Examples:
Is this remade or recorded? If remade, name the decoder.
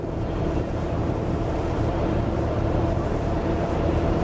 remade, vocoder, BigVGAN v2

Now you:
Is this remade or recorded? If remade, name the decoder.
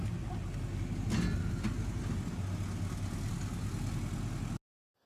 recorded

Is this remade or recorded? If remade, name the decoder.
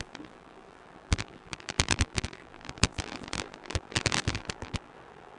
remade, vocoder, BigVGAN v2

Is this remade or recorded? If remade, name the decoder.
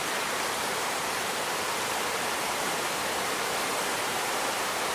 remade, vocoder, BigVGAN v2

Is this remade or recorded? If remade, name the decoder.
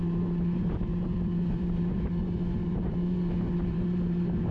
remade, vocoder, BigVGAN v2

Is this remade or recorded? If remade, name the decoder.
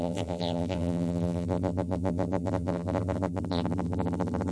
remade, vocoder, BigVGAN v2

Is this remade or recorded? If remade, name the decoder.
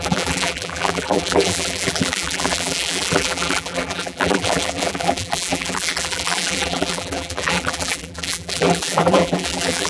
remade, vocoder, BigVGAN v2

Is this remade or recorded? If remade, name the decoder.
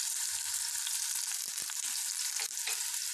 remade, vocoder, BigVGAN v2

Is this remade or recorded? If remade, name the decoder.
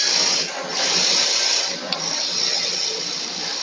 recorded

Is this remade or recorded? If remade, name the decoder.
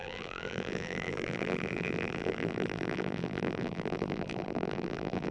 remade, vocoder, BigVGAN v2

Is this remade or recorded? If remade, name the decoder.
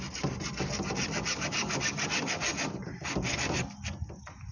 recorded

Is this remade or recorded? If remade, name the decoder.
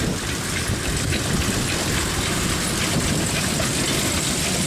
remade, vocoder, BigVGAN v2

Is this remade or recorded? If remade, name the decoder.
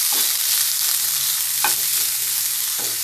recorded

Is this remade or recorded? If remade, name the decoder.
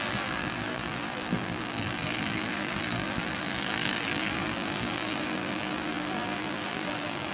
remade, vocoder, BigVGAN v2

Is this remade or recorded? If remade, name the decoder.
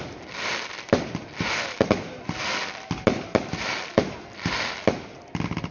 recorded